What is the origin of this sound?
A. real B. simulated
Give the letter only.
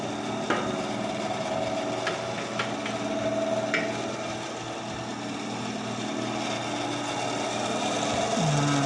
A